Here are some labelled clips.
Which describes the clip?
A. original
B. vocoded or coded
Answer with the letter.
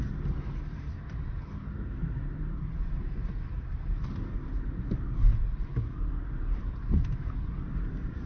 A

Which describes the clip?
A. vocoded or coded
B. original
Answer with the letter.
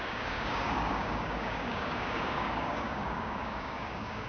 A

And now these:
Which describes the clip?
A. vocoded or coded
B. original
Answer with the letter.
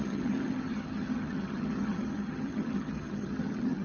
A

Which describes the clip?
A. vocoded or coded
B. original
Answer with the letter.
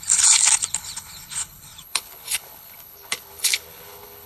A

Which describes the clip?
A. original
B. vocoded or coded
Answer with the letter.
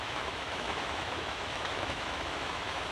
B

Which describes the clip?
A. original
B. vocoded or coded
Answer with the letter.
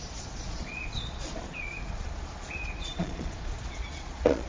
B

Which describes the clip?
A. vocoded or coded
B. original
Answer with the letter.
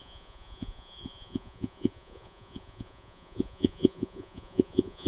A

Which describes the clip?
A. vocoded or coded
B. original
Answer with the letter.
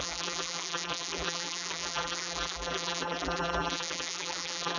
A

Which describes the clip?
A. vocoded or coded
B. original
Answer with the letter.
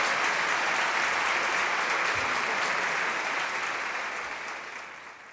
B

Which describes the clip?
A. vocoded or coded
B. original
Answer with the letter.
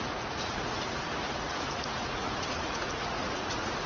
A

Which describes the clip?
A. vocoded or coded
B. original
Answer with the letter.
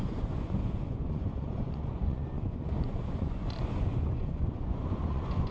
A